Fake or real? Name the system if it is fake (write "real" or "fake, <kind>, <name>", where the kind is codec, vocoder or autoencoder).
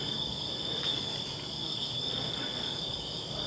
fake, codec, DAC